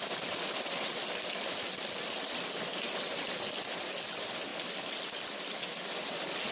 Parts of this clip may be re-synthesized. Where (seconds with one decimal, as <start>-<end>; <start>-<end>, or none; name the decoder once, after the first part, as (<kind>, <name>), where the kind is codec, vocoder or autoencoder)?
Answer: 4.5-5.5 (vocoder, BigVGAN v2)